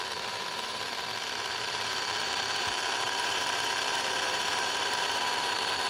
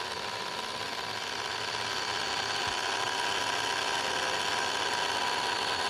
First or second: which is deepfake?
first